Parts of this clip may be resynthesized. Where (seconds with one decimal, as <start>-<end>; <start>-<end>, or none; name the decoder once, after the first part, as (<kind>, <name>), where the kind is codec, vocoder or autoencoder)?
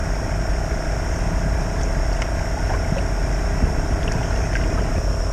none